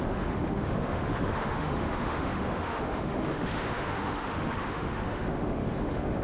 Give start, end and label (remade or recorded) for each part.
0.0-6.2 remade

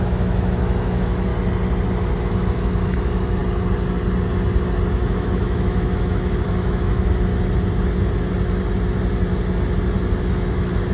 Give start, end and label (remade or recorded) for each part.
0.0-1.3 remade; 1.3-2.2 recorded; 2.2-3.4 remade; 3.4-4.9 recorded; 4.9-7.3 remade; 7.3-10.2 recorded; 10.2-10.9 remade